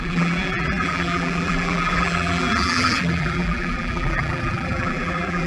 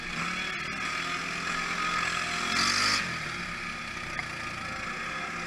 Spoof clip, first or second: first